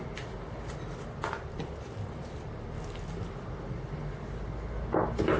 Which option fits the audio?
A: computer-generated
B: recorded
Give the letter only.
B